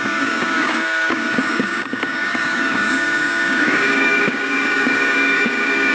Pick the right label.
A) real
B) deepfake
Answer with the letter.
B